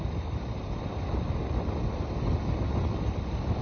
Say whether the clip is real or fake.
real